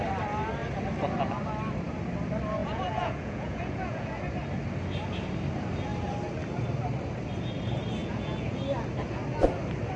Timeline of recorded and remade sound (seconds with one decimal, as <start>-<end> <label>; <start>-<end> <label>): 0.0-2.6 recorded; 2.6-4.2 remade; 4.2-8.0 recorded; 8.0-8.6 remade; 8.6-10.0 recorded

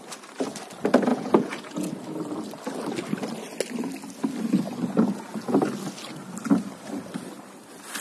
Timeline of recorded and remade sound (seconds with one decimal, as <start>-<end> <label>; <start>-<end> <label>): 0.0-1.1 recorded; 1.1-1.9 remade; 1.9-8.0 recorded

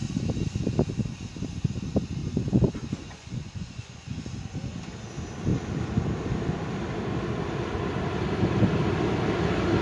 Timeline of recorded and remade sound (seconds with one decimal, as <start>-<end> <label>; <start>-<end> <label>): 0.0-2.2 recorded; 2.2-4.2 remade; 4.2-9.8 recorded

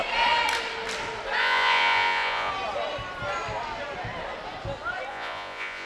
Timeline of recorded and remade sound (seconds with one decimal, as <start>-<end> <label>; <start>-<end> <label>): 0.0-1.4 recorded; 1.4-2.5 remade; 2.5-5.1 recorded; 5.1-5.9 remade

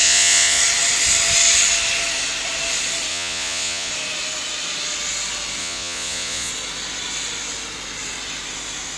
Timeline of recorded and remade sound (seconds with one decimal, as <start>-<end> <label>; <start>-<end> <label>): 0.0-0.6 remade; 0.6-3.1 recorded; 3.1-3.9 remade; 3.9-5.6 recorded; 5.6-6.5 remade; 6.5-9.0 recorded

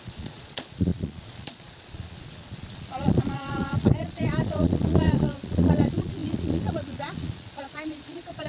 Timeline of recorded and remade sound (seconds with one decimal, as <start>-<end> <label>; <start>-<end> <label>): 0.0-8.5 remade

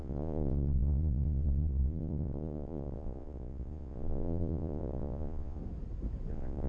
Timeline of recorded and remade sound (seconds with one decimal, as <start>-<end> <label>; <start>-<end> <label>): 0.0-5.6 remade; 5.6-6.3 recorded; 6.3-6.7 remade

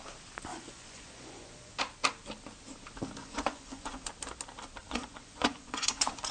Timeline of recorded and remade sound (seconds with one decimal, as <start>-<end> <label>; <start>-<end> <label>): 0.0-0.5 recorded; 0.5-1.8 remade; 1.8-3.2 recorded; 3.2-4.1 remade; 4.1-4.8 recorded; 4.8-6.3 remade